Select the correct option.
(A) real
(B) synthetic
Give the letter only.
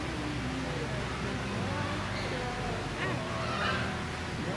A